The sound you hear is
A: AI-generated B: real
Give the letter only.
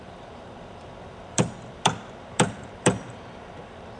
A